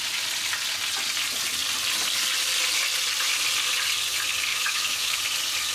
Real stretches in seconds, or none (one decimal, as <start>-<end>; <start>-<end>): 0.0-4.5; 5.2-5.7